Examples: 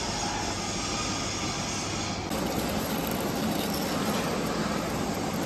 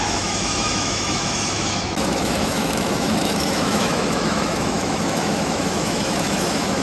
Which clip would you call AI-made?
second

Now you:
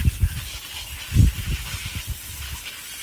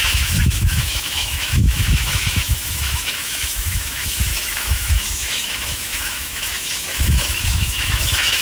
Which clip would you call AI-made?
second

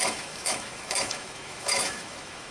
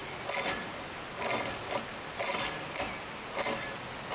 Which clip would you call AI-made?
first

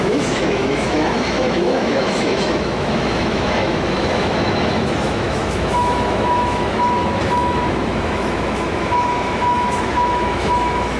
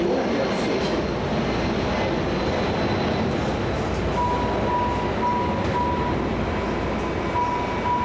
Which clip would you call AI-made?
first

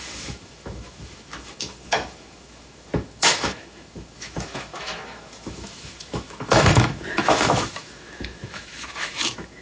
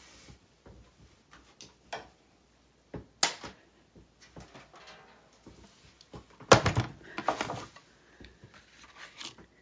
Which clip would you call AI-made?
first